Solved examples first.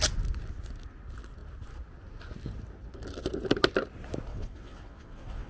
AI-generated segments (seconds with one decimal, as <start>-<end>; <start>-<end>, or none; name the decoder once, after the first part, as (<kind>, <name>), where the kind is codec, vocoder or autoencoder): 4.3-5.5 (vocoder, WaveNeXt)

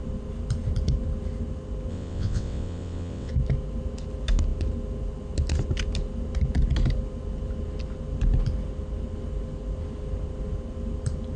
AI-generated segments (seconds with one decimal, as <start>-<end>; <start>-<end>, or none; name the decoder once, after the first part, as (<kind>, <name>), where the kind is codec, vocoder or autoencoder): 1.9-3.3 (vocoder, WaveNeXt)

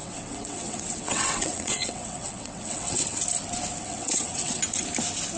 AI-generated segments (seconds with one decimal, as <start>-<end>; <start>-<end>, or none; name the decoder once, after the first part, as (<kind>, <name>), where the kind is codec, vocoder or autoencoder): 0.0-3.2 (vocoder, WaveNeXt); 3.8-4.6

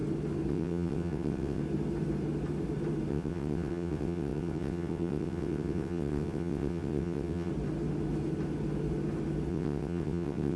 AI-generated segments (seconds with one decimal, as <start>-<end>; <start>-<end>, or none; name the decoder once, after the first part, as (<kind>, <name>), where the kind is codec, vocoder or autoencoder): 0.5-1.6 (vocoder, WaveNeXt); 3.1-7.5; 9.5-10.6

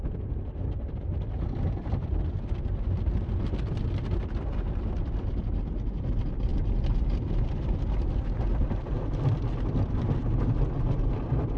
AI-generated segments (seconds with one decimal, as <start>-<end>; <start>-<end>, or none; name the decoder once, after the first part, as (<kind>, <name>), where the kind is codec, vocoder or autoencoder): none